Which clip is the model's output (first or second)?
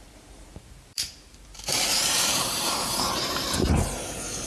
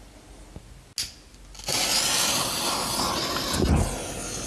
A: first